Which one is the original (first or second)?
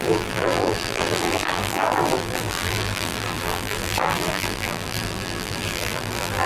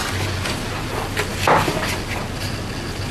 second